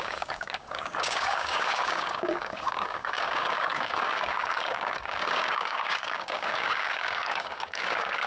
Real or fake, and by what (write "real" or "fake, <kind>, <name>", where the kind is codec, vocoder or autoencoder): fake, codec, DAC